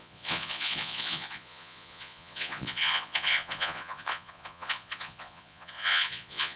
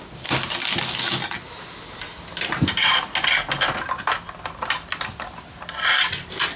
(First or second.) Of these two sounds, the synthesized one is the first